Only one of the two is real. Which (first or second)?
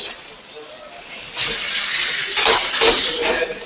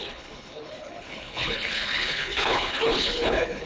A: first